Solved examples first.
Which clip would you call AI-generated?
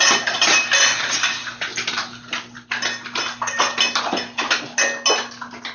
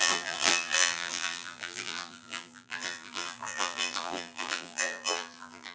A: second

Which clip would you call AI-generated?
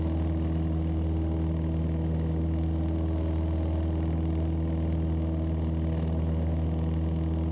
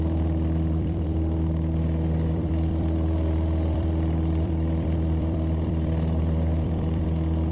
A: second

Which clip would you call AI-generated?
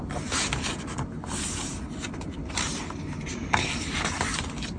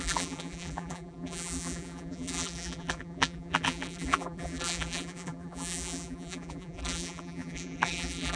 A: second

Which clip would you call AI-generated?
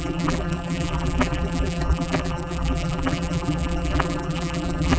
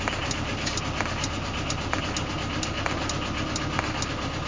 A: first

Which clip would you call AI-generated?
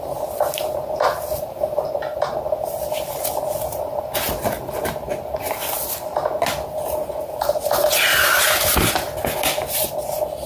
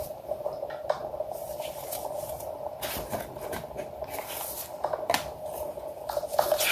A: second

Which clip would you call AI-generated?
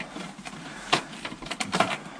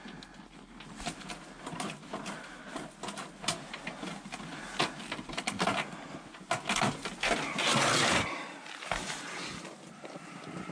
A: first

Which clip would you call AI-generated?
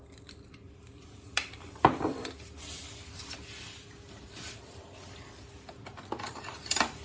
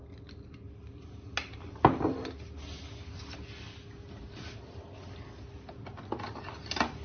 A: first